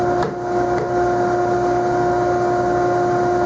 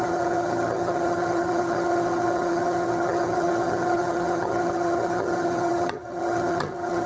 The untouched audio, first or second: first